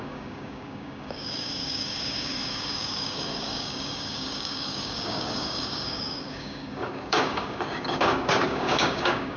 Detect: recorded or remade remade